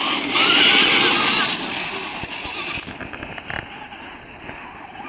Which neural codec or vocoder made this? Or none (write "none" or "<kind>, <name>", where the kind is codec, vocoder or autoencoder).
none